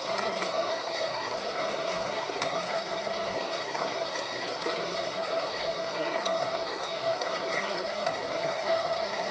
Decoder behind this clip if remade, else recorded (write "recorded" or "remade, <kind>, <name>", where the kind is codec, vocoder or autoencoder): remade, codec, SNAC